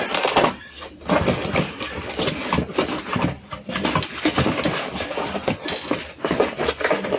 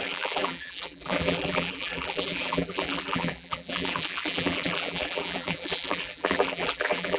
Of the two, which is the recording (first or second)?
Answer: first